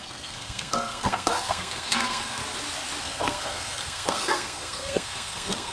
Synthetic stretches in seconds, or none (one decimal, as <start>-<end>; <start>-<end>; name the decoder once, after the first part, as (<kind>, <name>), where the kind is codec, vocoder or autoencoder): 0.0-2.4 (codec, SNAC); 3.0-5.7